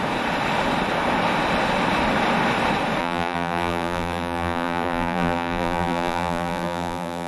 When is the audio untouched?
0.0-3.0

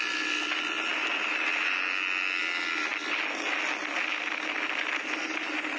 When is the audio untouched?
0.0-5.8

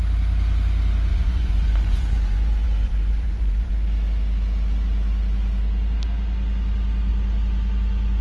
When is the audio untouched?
0.0-1.1; 3.7-8.2

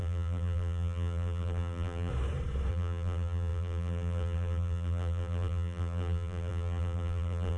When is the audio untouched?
2.1-2.7

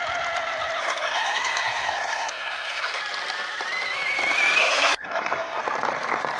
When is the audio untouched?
0.0-0.8; 3.0-4.6; 5.6-6.4

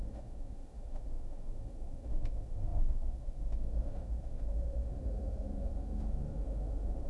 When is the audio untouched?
none

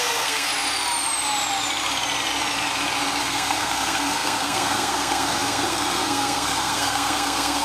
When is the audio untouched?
0.5-3.2